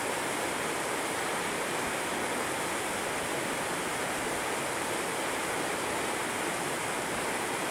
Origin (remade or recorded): recorded